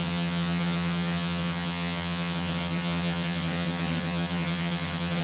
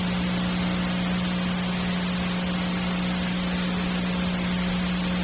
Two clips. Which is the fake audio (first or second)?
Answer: first